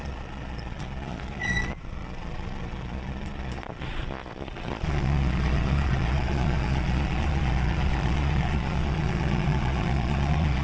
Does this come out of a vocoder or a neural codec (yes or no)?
yes